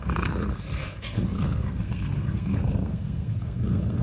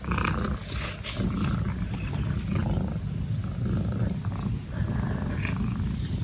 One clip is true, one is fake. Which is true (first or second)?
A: second